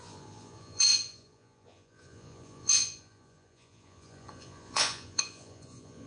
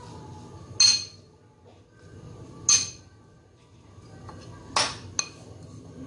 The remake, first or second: first